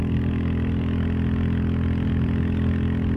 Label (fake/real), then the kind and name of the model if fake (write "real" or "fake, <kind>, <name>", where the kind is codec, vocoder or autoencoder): real